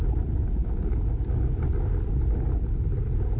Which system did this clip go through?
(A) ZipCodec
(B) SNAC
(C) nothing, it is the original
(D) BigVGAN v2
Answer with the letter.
C